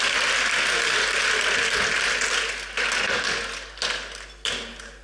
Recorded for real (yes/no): yes